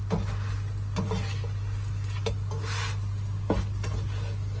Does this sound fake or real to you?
real